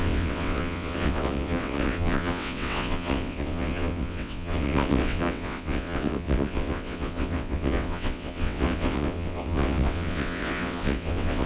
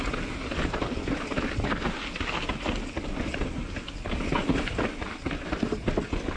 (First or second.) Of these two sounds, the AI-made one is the first